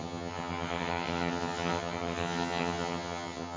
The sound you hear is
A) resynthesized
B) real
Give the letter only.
A